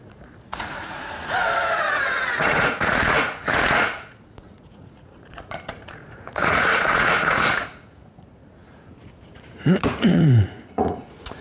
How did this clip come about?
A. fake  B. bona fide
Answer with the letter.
A